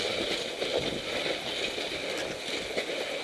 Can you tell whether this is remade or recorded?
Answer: recorded